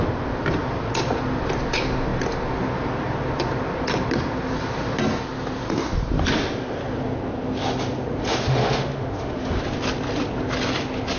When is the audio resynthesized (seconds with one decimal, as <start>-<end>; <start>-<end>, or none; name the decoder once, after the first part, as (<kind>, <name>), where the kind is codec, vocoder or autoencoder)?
8.2-9.6 (autoencoder, DAC-VAE)